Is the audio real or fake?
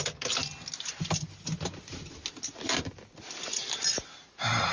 real